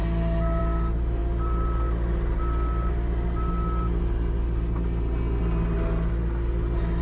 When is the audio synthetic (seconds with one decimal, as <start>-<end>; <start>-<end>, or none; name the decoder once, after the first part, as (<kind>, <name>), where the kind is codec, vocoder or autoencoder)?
none